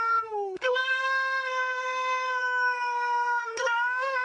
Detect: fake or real fake